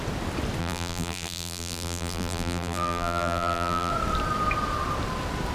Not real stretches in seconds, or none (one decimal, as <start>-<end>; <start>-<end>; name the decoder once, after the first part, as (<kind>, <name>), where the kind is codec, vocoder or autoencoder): 0.6-3.9 (vocoder, BigVGAN v2)